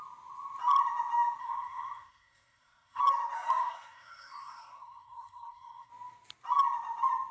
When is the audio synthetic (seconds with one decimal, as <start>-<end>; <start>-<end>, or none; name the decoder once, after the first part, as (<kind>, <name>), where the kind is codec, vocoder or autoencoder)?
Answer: 1.4-3.0 (codec, SNAC); 3.6-5.9